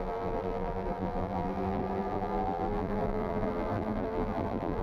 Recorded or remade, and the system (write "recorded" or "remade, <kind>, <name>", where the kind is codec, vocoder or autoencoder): remade, vocoder, BigVGAN v2